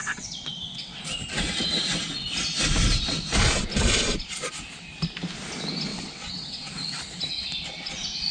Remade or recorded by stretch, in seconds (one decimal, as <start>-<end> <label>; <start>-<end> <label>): 0.0-1.0 remade; 1.0-5.9 recorded; 5.9-7.0 remade; 7.0-8.3 recorded